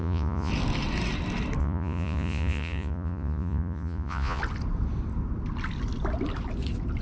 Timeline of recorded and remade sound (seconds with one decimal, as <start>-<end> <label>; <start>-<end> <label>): 0.0-0.5 remade; 0.5-1.6 recorded; 1.6-4.4 remade; 4.4-7.0 recorded